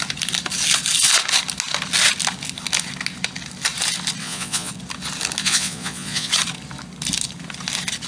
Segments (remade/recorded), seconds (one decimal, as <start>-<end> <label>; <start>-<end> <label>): 0.0-4.2 recorded; 4.2-4.7 remade; 4.7-5.4 recorded; 5.4-6.3 remade; 6.3-8.1 recorded